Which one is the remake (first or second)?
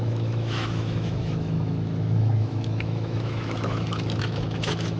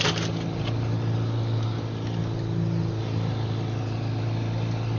first